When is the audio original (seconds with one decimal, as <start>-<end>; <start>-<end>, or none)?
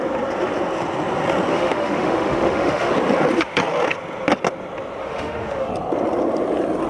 0.0-1.5; 2.9-5.0; 5.7-6.9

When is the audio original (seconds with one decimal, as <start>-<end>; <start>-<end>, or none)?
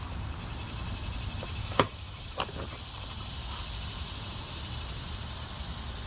0.0-1.6; 2.4-6.1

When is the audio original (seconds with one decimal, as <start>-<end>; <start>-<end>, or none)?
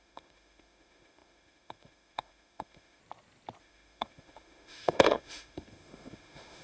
3.0-3.6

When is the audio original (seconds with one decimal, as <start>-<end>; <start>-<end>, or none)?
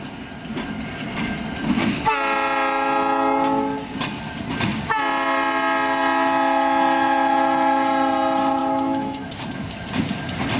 0.0-8.6; 9.3-10.6